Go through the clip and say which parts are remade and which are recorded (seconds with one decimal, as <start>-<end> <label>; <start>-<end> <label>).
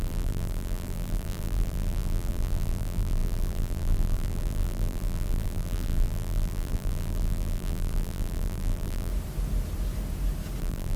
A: 0.0-9.1 remade; 9.1-10.6 recorded; 10.6-11.0 remade